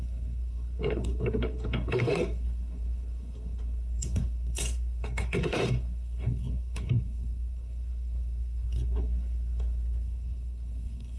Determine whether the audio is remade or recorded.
remade